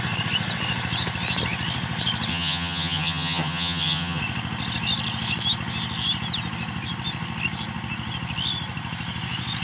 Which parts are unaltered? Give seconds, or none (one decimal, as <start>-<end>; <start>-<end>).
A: 0.0-2.3; 4.2-9.6